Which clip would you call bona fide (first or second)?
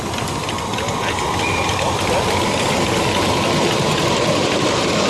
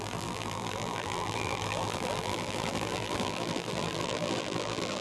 first